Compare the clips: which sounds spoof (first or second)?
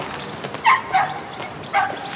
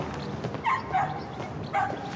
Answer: first